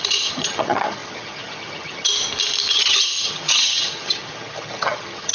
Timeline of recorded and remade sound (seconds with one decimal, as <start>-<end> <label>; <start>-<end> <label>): 0.0-2.1 remade; 2.1-2.7 recorded; 2.7-5.3 remade